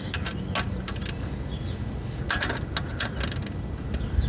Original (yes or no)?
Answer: yes